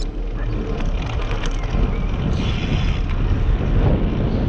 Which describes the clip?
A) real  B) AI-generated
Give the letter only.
A